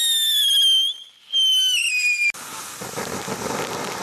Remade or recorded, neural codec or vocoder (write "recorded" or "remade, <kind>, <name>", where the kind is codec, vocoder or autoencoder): recorded